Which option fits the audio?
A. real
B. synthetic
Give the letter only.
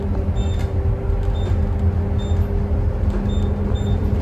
A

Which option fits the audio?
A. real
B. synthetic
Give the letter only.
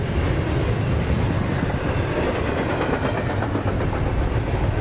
A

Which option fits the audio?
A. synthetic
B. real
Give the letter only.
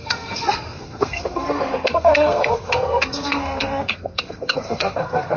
A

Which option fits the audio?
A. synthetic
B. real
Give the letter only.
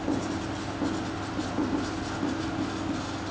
B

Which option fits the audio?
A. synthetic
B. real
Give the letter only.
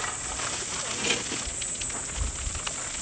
B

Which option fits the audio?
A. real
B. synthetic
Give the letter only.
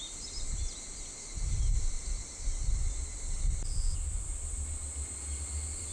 A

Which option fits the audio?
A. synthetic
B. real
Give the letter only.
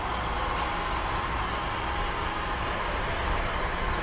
B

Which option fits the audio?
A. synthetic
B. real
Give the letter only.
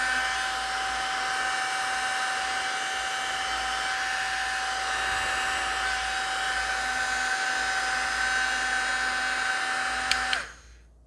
B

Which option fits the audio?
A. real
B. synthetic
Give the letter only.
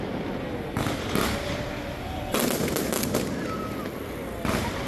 A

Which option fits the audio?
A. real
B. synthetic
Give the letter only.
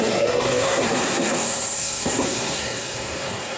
B